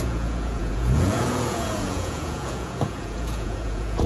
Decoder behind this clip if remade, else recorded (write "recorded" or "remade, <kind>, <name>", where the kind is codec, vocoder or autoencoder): remade, vocoder, Vocos